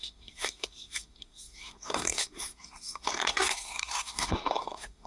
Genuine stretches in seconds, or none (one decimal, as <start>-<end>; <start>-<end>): none